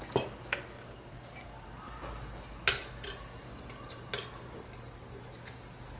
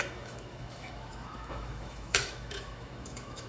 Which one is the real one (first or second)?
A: first